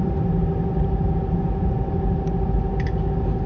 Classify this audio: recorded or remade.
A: recorded